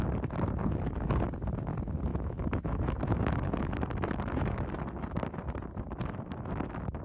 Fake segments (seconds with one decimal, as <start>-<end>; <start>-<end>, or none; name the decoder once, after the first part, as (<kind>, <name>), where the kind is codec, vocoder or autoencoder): 2.1-3.7 (autoencoder, DAC-VAE)